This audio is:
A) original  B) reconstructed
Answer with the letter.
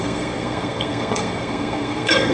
B